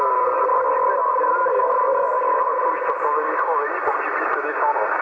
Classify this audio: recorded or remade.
recorded